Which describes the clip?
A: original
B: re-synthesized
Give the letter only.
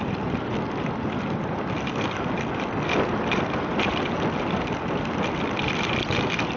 A